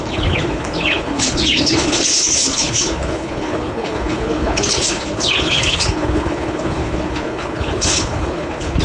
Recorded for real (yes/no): no